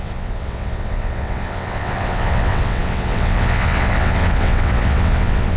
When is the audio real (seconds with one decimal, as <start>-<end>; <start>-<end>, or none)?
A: none